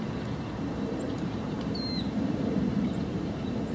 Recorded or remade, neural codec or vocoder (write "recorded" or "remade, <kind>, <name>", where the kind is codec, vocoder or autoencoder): remade, vocoder, BigVGAN v2